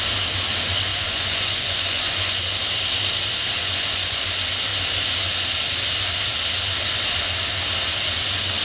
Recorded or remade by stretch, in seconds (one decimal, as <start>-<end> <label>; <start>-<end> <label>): 0.0-0.9 recorded; 0.9-2.4 remade; 2.4-3.6 recorded; 3.6-4.2 remade; 4.2-8.6 recorded